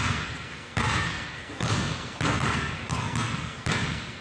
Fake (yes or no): yes